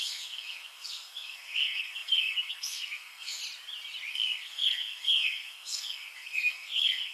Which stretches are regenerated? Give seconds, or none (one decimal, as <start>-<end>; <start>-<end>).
0.0-3.4; 4.1-7.1

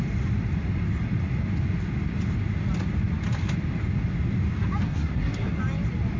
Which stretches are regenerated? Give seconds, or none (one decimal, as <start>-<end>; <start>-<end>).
4.8-5.6